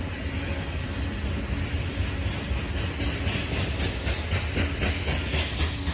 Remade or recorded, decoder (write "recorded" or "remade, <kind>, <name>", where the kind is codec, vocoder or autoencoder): recorded